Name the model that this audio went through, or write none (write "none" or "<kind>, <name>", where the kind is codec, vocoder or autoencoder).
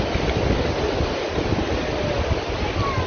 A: none